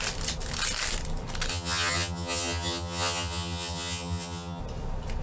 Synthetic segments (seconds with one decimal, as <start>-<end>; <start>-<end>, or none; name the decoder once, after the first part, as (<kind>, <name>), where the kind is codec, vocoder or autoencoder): 1.5-4.6 (vocoder, HiFi-GAN)